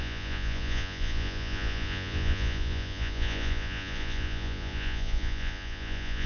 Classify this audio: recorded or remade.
remade